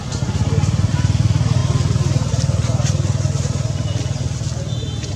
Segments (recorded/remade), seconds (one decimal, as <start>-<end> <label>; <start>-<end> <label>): 0.0-5.2 recorded